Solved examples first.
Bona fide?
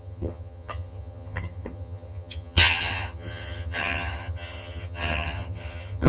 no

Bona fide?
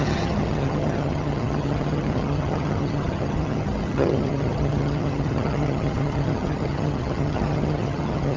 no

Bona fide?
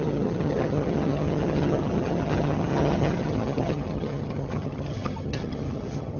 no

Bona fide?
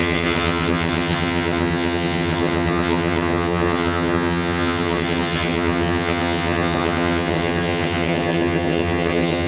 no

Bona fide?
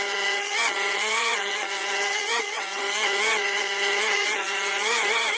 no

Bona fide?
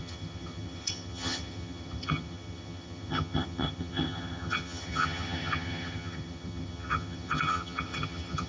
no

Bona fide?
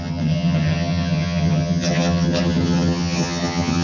no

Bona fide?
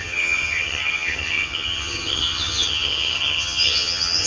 no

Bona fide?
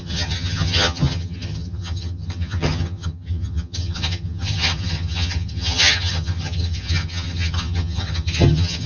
no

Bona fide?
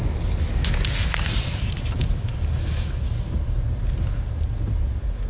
yes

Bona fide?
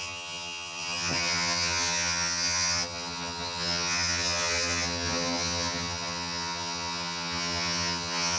no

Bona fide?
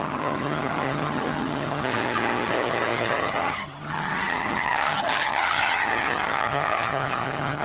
no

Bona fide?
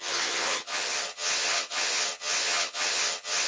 no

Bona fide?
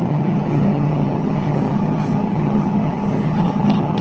no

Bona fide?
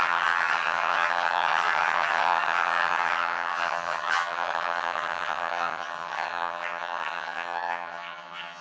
no